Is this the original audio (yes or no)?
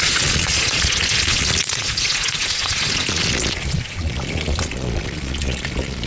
no